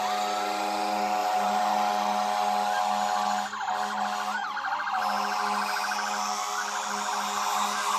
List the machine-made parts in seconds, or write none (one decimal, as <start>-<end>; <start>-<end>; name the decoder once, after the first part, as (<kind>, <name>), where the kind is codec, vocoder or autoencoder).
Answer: 1.2-1.9 (vocoder, BigVGAN v2)